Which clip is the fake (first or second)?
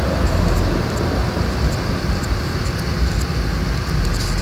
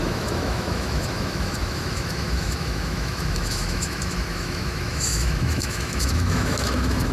second